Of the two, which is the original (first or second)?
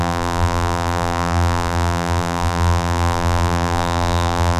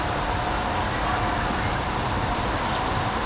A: second